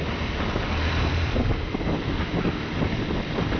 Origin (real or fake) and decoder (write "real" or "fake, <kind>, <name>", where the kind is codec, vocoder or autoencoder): real